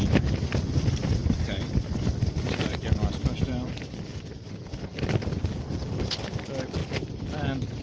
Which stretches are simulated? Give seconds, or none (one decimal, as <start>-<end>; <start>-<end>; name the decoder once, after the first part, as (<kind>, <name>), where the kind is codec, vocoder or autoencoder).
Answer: 1.2-5.0 (vocoder, BigVGAN v2); 6.8-7.8